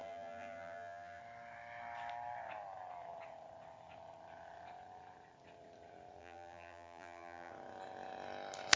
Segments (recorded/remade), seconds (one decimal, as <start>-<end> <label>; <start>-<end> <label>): 0.0-1.2 remade; 1.2-6.2 recorded; 6.2-7.5 remade; 7.5-8.8 recorded

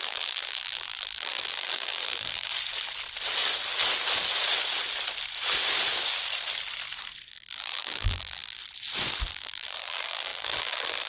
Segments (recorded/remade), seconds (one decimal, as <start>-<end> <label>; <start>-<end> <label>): 0.0-2.5 remade; 2.5-7.3 recorded; 7.3-8.6 remade; 8.6-9.3 recorded; 9.3-11.1 remade

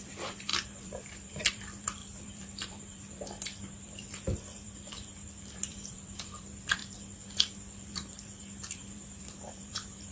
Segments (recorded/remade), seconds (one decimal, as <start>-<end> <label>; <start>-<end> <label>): 0.0-6.8 remade; 6.8-7.9 recorded; 7.9-10.1 remade

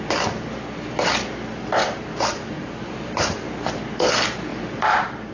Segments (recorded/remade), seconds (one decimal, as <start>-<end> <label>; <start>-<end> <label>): 0.0-1.8 recorded; 1.8-3.5 remade; 3.5-4.5 recorded; 4.5-5.3 remade

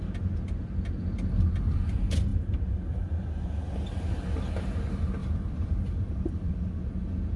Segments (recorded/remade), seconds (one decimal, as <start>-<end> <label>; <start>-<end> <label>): 0.0-5.2 recorded; 5.2-6.5 remade; 6.5-7.4 recorded

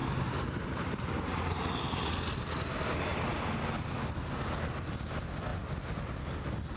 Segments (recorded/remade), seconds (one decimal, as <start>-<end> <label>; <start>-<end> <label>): 0.0-2.1 remade; 2.1-6.8 recorded

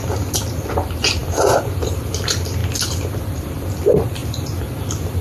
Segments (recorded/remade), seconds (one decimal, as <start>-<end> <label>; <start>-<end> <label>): 0.0-5.2 remade

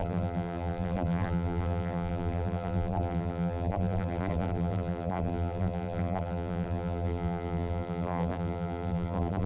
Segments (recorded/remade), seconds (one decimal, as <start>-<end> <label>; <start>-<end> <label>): 0.0-9.5 remade